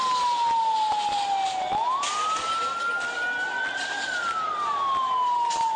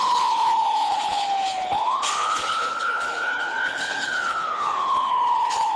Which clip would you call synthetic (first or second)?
second